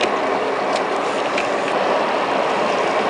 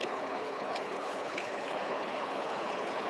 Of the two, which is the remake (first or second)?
second